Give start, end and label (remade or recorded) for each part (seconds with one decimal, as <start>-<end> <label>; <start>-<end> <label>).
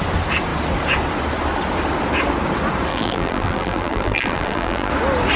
0.0-2.9 recorded; 2.9-4.9 remade; 4.9-5.4 recorded